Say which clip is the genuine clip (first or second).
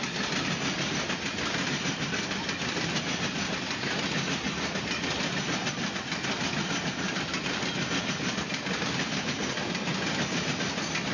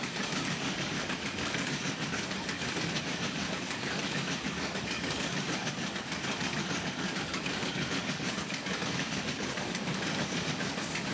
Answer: first